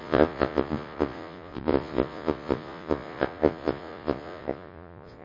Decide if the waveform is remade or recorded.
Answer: remade